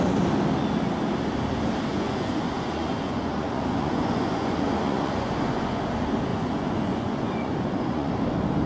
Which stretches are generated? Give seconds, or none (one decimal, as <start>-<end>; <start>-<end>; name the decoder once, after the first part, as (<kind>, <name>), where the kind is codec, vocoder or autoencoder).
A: 1.9-5.8 (vocoder, Vocos); 6.3-8.1